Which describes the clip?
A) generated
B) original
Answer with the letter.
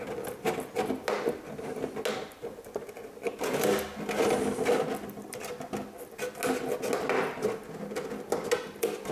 B